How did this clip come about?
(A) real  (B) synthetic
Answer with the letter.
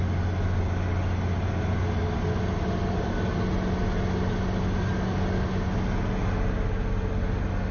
A